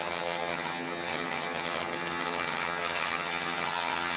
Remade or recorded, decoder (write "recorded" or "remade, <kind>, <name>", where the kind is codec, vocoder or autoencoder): remade, vocoder, HiFi-GAN